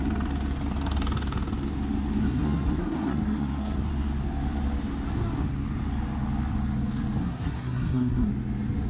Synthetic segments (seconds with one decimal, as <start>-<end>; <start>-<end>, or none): 2.2-3.9; 7.2-8.3